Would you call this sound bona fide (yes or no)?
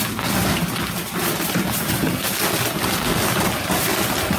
yes